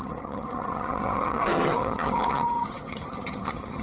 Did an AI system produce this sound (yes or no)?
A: yes